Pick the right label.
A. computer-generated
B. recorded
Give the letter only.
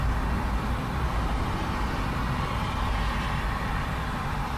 B